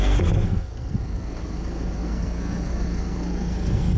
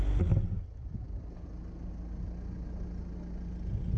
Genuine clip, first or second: second